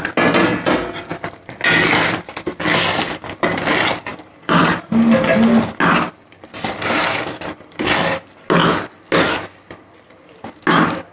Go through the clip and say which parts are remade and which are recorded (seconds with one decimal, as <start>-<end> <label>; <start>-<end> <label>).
0.0-11.1 recorded